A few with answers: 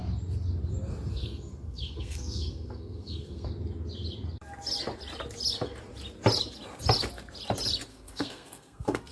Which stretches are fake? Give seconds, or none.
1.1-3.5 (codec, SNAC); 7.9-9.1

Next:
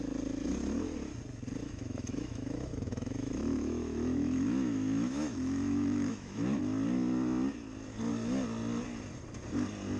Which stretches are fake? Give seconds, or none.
1.6-6.6 (autoencoder, DAC-VAE)

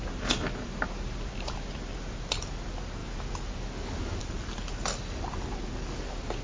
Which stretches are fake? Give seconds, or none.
none

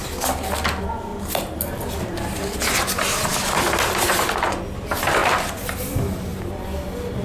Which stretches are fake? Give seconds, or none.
1.1-2.2 (vocoder, BigVGAN v2); 6.3-7.2

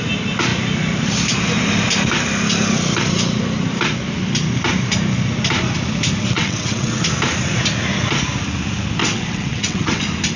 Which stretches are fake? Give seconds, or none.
6.2-7.0 (vocoder, WaveNeXt); 9.0-10.0

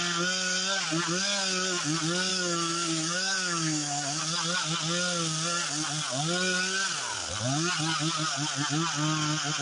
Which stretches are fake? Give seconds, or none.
2.3-4.2 (autoencoder, DAC-VAE)

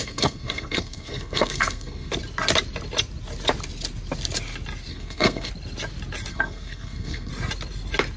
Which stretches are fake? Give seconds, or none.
0.0-2.1 (codec, SNAC); 4.9-5.5; 6.3-7.3

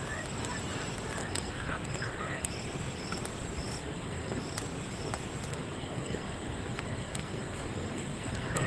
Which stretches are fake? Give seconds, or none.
1.2-2.5 (codec, SNAC); 3.8-4.4; 5.5-8.7